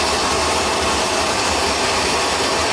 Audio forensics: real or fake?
real